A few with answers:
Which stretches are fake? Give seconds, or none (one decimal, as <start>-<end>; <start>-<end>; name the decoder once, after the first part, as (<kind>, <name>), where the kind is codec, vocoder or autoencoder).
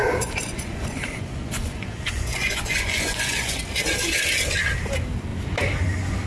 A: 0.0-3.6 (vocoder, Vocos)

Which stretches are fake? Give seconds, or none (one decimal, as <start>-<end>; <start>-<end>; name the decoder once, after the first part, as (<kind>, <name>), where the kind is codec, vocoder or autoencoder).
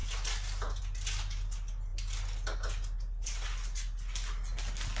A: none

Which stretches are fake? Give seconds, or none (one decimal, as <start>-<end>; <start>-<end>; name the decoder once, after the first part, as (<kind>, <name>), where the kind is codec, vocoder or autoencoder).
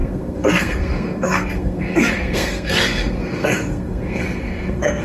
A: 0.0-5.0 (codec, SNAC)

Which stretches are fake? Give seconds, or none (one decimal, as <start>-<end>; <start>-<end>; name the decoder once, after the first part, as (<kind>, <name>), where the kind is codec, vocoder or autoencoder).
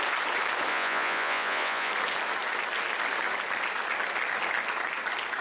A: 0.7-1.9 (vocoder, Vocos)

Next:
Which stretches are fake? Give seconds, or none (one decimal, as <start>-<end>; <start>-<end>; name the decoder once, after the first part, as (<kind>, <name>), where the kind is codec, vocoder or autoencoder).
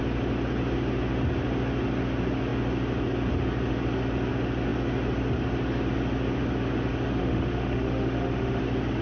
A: 7.2-8.6 (autoencoder, DAC-VAE)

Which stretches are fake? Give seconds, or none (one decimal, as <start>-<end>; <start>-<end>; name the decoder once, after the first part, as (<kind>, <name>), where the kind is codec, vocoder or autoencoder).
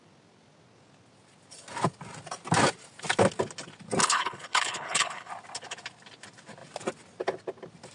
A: 4.0-5.3 (codec, HILCodec)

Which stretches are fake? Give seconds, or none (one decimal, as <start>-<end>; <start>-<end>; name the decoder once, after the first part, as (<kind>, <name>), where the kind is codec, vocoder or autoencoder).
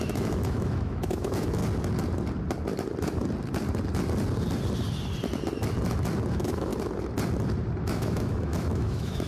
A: 0.0-1.6 (autoencoder, DAC-VAE); 6.3-6.7; 7.8-9.3